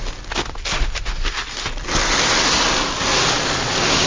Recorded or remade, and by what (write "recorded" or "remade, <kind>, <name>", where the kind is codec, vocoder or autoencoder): recorded